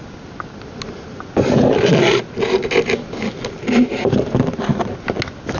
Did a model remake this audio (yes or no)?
no